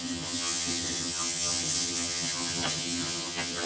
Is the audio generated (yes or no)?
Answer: yes